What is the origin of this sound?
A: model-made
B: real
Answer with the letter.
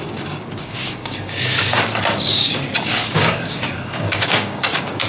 A